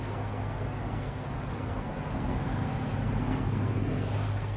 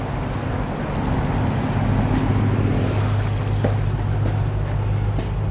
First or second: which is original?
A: second